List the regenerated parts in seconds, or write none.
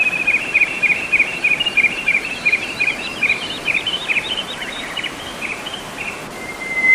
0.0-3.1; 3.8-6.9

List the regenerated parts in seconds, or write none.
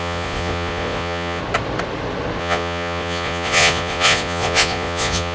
0.0-1.4; 2.4-5.3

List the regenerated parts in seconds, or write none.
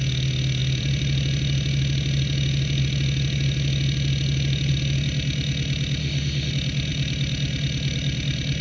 6.0-6.5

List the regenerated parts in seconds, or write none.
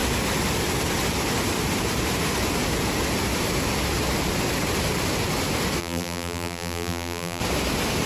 5.8-7.4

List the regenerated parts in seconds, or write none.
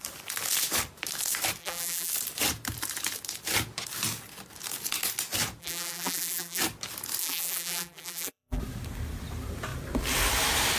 1.6-2.1; 5.6-6.6; 7.2-8.6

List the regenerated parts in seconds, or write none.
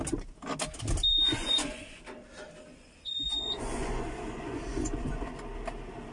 1.1-2.0; 2.7-5.3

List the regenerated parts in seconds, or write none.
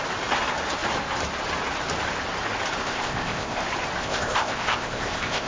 2.8-3.6; 4.0-5.5